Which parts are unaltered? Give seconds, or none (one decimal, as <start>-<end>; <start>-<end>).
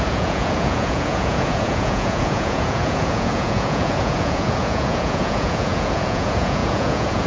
none